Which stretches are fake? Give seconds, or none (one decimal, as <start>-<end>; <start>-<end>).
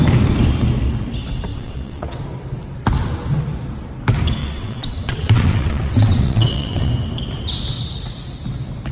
1.5-2.2; 4.4-6.9